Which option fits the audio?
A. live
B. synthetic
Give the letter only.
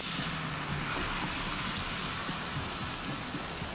A